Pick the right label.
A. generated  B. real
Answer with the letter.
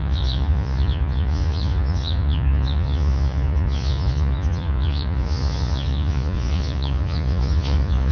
A